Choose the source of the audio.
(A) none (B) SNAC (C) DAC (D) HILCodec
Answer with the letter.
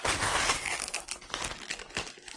A